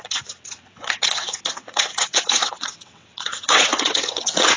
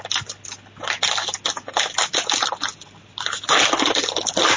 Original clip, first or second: second